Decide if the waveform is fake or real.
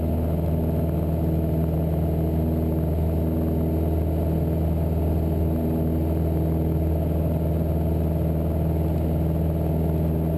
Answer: real